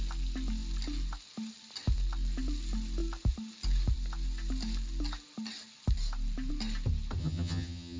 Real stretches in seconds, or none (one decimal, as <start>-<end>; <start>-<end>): 0.0-7.2